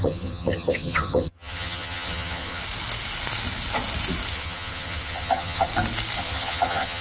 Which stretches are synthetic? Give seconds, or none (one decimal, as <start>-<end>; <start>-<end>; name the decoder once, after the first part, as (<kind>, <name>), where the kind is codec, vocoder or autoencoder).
0.0-2.6 (vocoder, HiFi-GAN); 4.3-5.7; 6.2-7.0